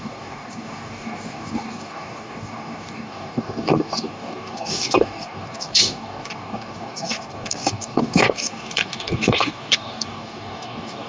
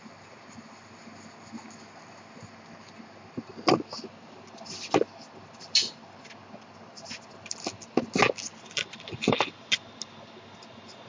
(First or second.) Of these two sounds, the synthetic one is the first